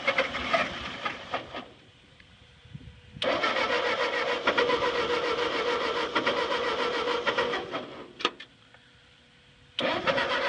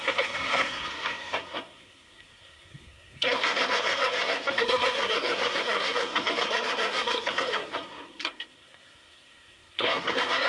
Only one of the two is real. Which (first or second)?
first